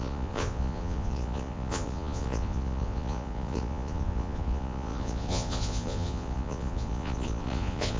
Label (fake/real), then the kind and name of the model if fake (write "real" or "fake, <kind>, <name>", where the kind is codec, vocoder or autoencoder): fake, vocoder, Vocos